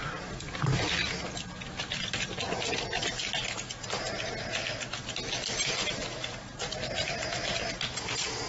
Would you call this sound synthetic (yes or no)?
no